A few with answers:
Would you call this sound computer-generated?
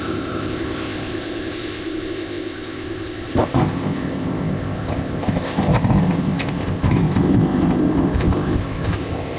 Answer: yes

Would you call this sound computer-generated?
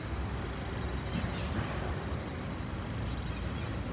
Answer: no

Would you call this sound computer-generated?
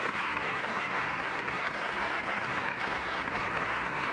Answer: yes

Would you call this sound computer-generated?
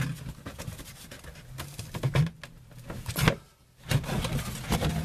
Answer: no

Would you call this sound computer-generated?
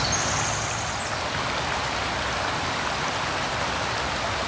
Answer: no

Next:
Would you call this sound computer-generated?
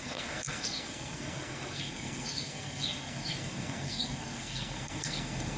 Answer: yes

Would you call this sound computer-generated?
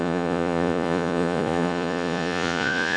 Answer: yes